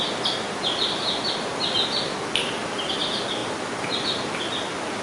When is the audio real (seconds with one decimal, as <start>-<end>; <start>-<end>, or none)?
0.0-5.0